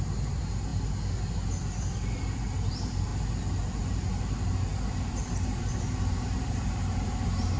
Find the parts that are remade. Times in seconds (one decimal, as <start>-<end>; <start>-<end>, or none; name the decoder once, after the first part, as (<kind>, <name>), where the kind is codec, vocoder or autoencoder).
0.0-0.7 (vocoder, BigVGAN v2); 2.7-3.1; 3.6-7.6